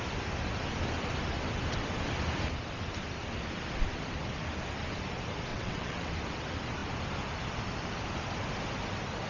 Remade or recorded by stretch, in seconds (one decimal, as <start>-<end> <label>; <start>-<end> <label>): 0.0-5.5 recorded; 5.5-6.1 remade; 6.1-9.3 recorded